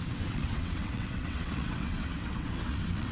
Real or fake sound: fake